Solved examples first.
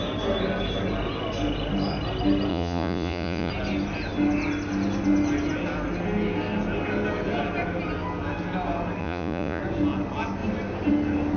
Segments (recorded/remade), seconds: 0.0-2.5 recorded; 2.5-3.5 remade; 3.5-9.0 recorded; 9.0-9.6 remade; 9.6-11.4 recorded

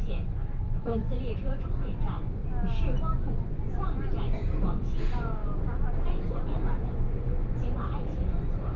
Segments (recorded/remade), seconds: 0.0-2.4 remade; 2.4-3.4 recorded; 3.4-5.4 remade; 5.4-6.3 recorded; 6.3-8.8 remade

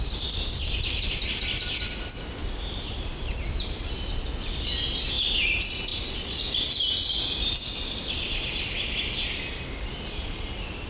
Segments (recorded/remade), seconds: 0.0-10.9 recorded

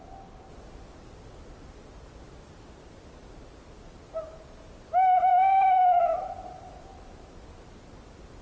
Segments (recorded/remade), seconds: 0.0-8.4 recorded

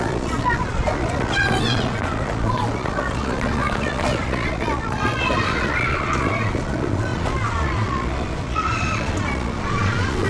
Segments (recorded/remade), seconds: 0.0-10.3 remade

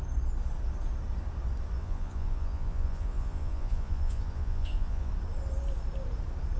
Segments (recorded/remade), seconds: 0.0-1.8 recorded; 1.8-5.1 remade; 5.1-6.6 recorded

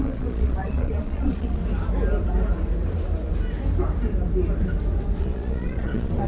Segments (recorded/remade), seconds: 0.0-1.6 remade; 1.6-5.2 recorded; 5.2-6.3 remade

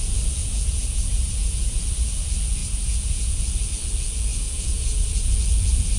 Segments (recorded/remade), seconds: 0.0-0.4 recorded; 0.4-1.8 remade; 1.8-2.6 recorded; 2.6-3.4 remade; 3.4-4.3 recorded; 4.3-5.3 remade; 5.3-6.0 recorded